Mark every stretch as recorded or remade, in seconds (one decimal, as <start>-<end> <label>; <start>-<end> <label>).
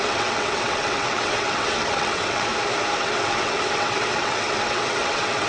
0.0-2.5 remade; 2.5-3.0 recorded; 3.0-5.5 remade